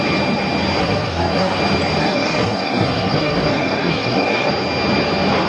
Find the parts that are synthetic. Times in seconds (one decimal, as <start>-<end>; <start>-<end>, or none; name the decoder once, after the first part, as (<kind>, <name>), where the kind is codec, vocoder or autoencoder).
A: 0.8-1.6 (codec, SNAC); 2.0-4.5